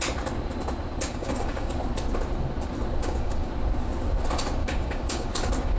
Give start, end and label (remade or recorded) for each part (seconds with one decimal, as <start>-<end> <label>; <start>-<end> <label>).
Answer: 0.0-1.1 recorded; 1.1-1.7 remade; 1.7-3.0 recorded; 3.0-3.5 remade; 3.5-4.6 recorded; 4.6-5.3 remade; 5.3-5.8 recorded